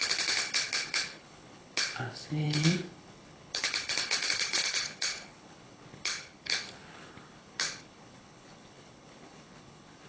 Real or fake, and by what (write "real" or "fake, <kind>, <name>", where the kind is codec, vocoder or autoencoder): fake, codec, HILCodec